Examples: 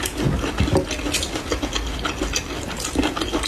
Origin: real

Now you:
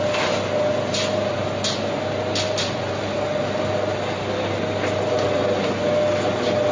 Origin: real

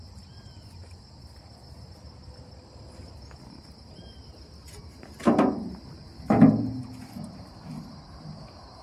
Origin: real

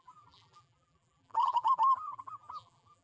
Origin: fake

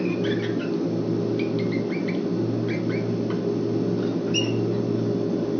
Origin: real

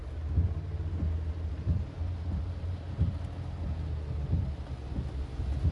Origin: real